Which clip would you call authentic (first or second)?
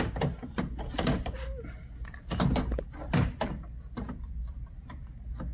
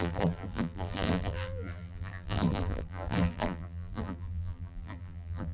first